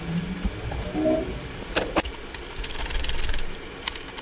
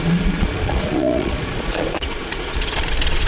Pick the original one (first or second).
first